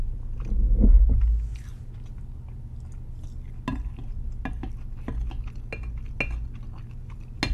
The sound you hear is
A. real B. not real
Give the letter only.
A